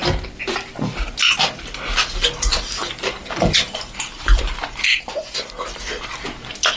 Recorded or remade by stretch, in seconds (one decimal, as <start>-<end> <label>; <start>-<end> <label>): 0.0-2.5 recorded; 2.5-4.4 remade; 4.4-4.9 recorded; 4.9-5.8 remade; 5.8-6.8 recorded